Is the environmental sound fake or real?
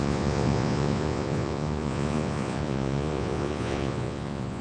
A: fake